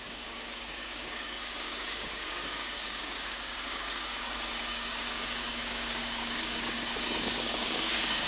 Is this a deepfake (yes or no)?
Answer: yes